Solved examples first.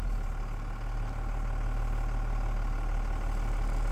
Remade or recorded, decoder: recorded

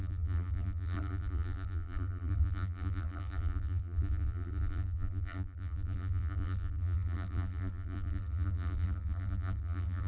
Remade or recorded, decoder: remade, vocoder, BigVGAN v2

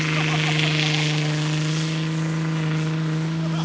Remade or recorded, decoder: recorded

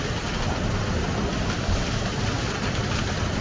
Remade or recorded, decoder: recorded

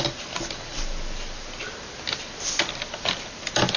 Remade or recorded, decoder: recorded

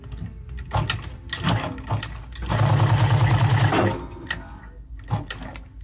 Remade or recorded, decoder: recorded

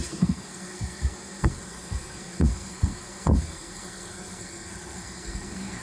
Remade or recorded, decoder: remade, codec, SNAC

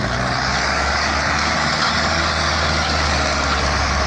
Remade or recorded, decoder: remade, codec, DAC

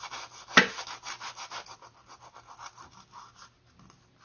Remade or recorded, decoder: recorded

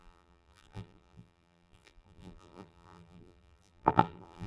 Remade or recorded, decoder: remade, vocoder, BigVGAN v2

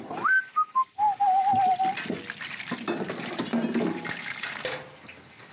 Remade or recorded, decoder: recorded